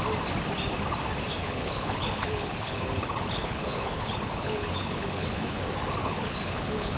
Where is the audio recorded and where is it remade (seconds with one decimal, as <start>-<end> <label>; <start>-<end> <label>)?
0.0-1.4 recorded; 1.4-5.6 remade; 5.6-6.0 recorded; 6.0-7.0 remade